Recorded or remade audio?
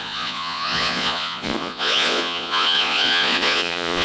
remade